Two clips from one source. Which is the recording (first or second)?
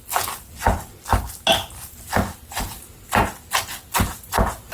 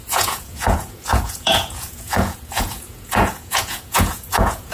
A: first